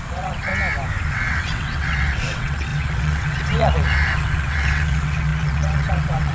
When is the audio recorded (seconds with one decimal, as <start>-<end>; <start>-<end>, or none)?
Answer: 0.5-1.1